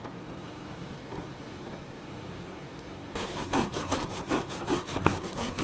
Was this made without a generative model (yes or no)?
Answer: no